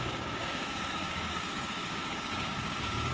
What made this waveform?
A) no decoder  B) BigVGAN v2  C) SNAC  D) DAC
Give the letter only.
D